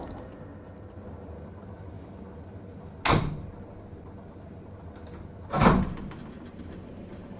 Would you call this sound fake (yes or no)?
no